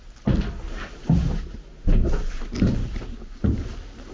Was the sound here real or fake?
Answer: real